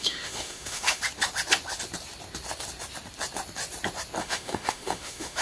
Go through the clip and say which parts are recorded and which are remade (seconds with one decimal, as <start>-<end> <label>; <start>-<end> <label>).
0.0-1.0 remade; 1.0-4.2 recorded; 4.2-5.4 remade